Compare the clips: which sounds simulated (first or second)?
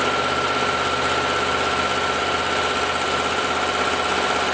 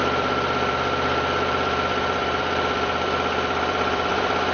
second